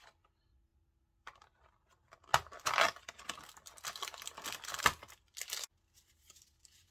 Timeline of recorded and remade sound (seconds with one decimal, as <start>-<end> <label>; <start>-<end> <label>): 0.0-6.9 recorded